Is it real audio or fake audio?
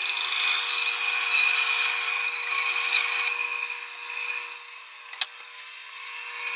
real